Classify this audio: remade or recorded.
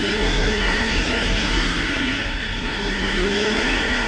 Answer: remade